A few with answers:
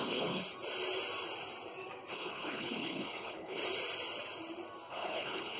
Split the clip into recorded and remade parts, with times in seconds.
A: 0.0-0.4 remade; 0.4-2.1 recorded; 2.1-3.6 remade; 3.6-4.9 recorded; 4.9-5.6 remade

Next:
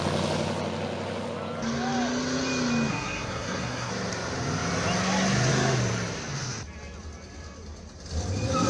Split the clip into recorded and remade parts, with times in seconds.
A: 0.0-2.9 recorded; 2.9-3.9 remade; 3.9-8.7 recorded

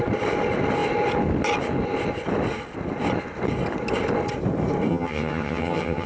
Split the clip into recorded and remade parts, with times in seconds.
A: 0.0-4.9 recorded; 4.9-6.1 remade